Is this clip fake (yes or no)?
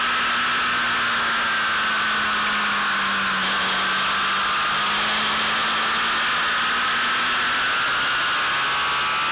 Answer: no